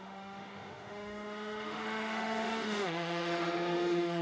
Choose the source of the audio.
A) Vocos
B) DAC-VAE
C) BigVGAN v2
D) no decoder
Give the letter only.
B